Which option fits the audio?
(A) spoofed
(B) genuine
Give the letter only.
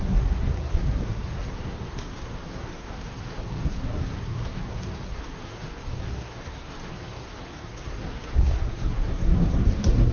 A